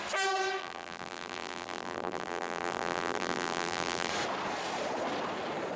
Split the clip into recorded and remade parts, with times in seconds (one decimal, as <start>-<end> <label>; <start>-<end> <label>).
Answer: 0.0-0.6 recorded; 0.6-4.1 remade; 4.1-5.8 recorded

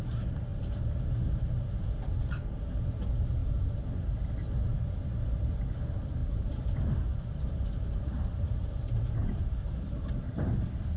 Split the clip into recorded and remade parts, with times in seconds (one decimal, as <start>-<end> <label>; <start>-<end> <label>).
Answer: 0.0-0.5 recorded; 0.5-1.5 remade; 1.5-6.2 recorded; 6.2-10.1 remade; 10.1-11.0 recorded